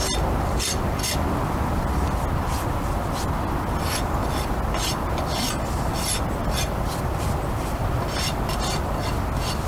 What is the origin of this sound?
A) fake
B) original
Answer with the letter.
B